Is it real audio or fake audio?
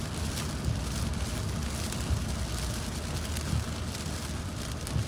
real